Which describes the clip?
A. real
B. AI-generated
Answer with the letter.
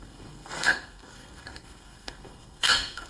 B